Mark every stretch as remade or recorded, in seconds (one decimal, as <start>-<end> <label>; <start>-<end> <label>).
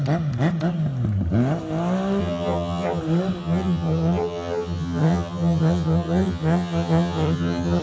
0.0-2.2 recorded; 2.2-3.0 remade; 3.0-3.4 recorded; 3.4-7.8 remade